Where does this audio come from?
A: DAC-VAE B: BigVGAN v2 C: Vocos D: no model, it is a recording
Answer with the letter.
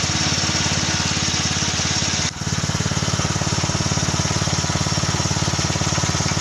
D